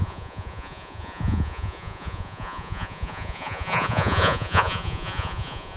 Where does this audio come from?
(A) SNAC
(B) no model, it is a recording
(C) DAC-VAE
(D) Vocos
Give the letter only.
D